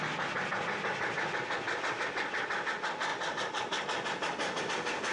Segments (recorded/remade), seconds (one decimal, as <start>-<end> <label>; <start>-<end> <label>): 0.0-5.1 recorded